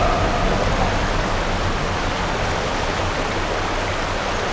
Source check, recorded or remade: recorded